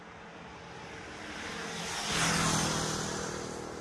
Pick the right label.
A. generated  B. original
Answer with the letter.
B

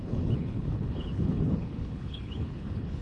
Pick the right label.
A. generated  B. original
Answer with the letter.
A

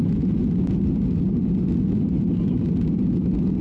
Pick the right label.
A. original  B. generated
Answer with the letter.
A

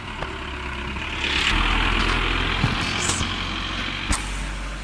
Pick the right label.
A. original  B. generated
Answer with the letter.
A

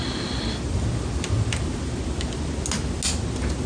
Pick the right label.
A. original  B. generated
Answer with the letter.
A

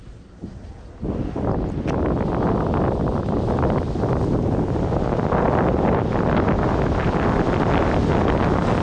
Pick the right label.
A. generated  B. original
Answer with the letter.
B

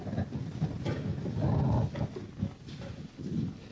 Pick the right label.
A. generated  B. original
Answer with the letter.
B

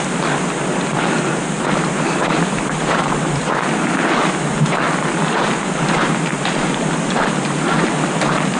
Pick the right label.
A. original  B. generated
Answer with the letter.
A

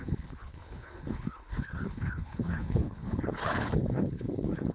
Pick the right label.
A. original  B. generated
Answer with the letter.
B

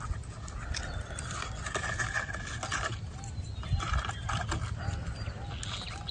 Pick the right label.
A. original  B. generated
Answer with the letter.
A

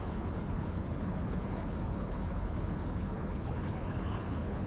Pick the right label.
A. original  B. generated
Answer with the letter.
B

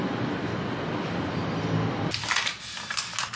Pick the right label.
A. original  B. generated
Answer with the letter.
A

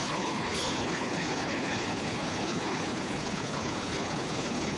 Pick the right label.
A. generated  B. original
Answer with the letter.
A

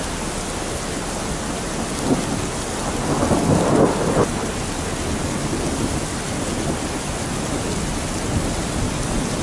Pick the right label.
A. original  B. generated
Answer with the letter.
A